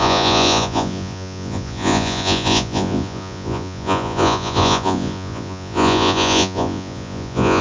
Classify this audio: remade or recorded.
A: remade